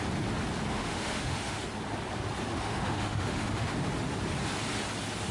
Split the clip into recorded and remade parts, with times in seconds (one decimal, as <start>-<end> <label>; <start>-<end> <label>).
0.0-0.7 recorded; 0.7-1.6 remade; 1.6-2.5 recorded; 2.5-3.7 remade; 3.7-5.3 recorded